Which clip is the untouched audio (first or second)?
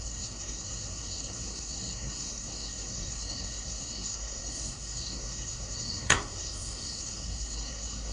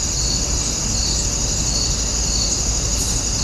second